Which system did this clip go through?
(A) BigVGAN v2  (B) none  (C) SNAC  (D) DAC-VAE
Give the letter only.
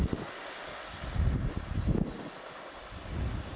B